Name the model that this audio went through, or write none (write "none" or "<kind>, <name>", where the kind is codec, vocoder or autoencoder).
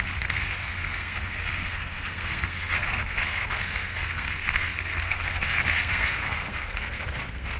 codec, SNAC